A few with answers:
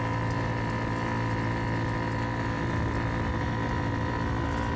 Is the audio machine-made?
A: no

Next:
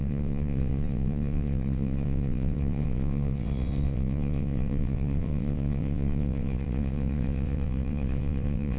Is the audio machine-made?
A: yes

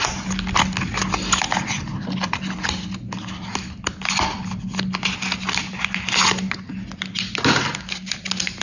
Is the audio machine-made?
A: no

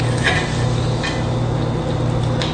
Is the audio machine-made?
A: no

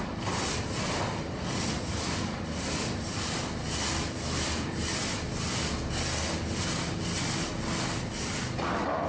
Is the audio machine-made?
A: no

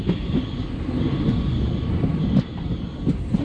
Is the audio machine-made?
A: no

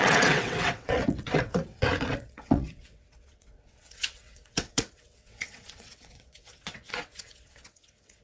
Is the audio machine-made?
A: yes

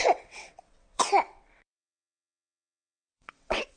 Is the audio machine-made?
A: yes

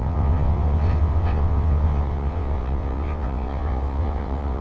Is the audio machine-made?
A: yes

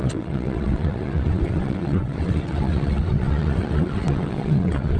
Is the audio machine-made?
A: yes